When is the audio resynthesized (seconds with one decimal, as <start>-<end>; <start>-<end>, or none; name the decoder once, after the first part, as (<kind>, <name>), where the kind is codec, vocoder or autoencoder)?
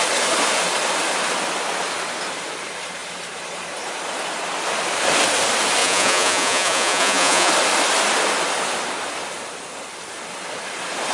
5.8-7.5 (vocoder, Vocos)